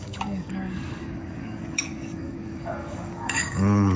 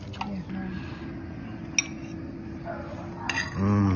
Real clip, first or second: second